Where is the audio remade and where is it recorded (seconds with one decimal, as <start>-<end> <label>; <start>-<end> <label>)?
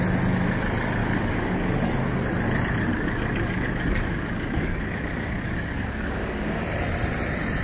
0.0-1.0 recorded; 1.0-1.7 remade; 1.7-2.9 recorded; 2.9-6.6 remade; 6.6-7.6 recorded